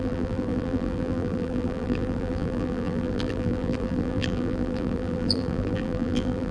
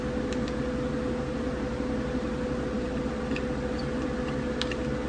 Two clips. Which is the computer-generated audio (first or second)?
first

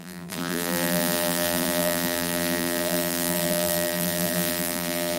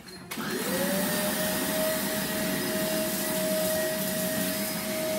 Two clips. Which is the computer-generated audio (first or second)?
first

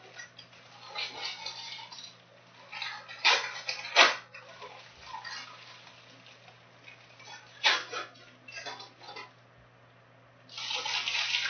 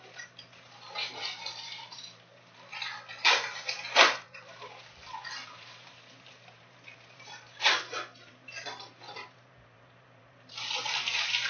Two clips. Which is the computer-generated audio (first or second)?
second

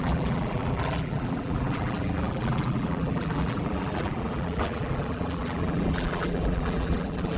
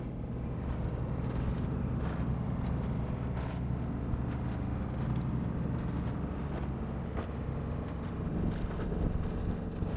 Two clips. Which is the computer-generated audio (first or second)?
first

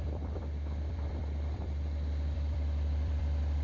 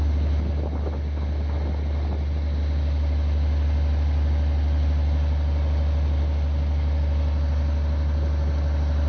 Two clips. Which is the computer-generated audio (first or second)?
first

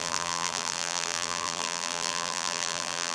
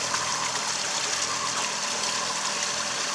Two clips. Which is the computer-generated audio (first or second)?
first